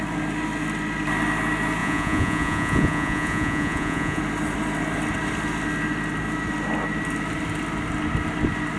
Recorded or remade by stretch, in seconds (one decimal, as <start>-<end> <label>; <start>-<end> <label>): 0.0-1.8 recorded; 1.8-4.2 remade; 4.2-8.8 recorded